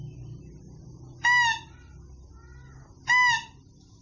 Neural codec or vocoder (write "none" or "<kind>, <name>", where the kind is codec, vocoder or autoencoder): none